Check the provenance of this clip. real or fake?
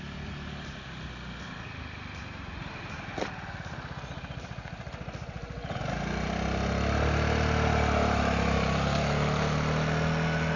real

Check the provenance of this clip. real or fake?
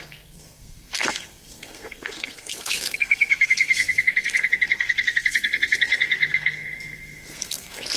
fake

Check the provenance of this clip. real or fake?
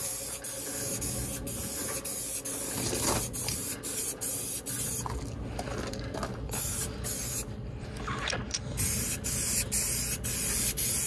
real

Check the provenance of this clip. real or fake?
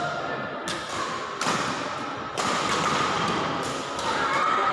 real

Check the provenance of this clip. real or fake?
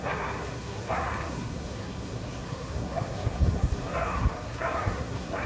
fake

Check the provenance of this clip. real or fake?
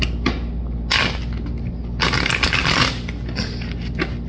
real